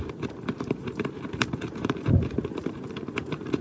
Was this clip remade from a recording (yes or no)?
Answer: yes